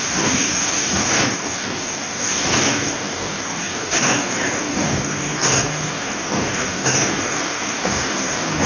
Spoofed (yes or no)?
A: yes